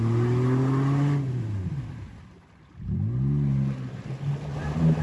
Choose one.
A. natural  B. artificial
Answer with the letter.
A